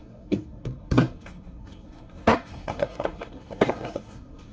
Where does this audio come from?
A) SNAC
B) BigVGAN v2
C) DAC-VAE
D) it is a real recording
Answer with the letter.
A